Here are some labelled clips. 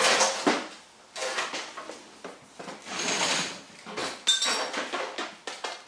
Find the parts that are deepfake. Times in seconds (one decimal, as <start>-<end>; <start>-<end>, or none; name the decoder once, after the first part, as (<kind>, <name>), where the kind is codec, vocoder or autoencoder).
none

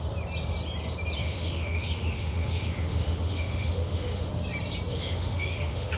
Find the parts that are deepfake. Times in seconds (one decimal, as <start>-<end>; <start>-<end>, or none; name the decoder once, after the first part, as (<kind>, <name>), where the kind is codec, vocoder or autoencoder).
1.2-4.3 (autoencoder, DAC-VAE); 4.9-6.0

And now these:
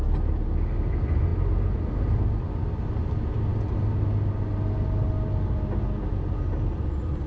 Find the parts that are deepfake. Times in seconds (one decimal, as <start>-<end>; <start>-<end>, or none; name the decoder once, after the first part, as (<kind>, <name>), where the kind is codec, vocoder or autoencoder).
none

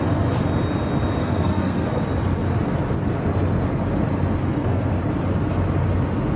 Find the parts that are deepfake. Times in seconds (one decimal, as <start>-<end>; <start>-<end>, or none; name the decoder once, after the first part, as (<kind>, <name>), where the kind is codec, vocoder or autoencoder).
1.2-2.0 (codec, SNAC); 4.4-4.9